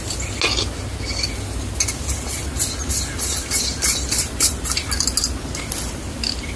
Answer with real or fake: real